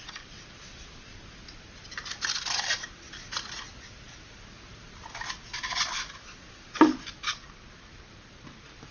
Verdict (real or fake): real